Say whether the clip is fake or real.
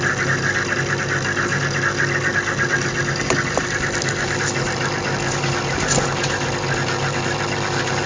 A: real